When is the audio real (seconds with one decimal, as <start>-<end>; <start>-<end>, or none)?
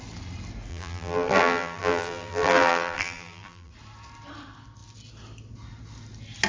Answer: 0.0-0.7; 3.7-6.5